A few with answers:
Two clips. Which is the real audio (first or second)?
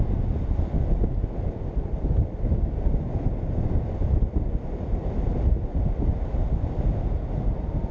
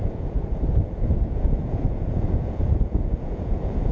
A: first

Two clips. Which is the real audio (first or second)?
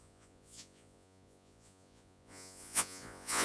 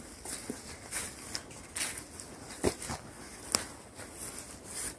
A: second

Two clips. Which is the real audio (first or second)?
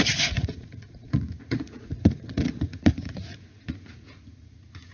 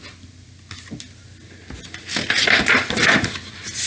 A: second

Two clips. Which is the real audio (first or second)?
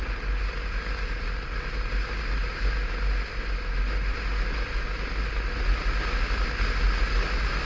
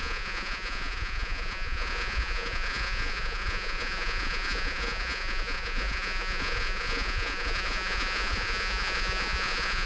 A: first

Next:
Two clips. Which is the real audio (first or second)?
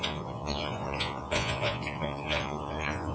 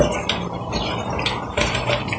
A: second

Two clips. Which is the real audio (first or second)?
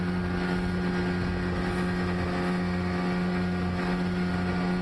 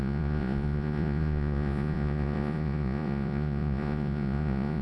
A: first